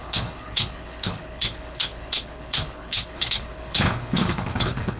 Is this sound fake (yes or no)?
yes